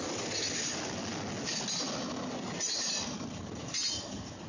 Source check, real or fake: real